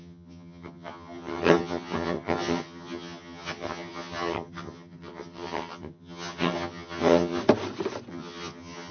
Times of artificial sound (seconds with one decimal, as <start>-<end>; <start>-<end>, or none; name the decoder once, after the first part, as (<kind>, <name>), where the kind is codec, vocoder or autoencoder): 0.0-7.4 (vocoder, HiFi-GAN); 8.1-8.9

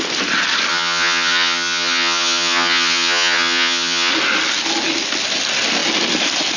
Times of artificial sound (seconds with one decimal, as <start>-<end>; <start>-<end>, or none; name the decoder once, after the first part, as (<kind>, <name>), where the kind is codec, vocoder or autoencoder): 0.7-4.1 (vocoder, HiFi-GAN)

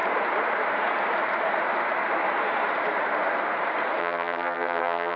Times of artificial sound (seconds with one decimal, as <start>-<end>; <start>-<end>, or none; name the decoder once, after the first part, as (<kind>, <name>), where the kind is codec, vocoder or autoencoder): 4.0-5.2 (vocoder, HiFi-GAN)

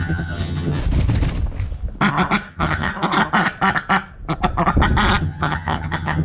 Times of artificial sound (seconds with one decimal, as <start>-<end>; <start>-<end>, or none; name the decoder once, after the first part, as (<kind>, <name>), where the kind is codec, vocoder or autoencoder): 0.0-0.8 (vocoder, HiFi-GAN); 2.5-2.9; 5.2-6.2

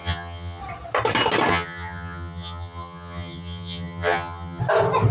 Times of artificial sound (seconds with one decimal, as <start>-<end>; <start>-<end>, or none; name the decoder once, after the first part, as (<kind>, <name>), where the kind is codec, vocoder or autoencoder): 0.0-0.6 (vocoder, HiFi-GAN); 1.5-4.6

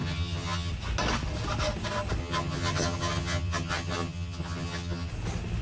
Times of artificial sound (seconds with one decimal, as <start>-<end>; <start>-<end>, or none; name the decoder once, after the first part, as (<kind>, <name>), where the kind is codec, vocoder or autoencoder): 0.0-0.7 (vocoder, HiFi-GAN); 2.2-5.1